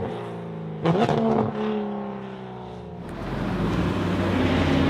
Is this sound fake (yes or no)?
no